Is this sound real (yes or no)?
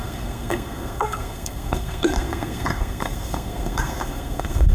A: no